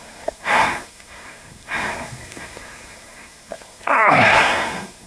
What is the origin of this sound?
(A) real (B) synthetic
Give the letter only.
B